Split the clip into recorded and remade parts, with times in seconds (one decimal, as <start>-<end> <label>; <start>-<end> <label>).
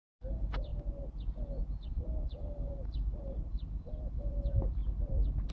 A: 0.0-0.7 remade; 0.7-1.9 recorded; 1.9-5.5 remade